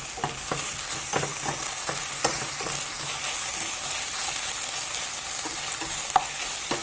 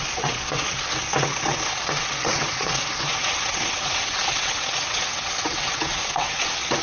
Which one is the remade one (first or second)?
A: second